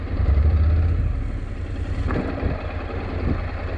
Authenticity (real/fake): real